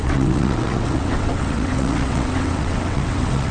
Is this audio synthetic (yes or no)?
yes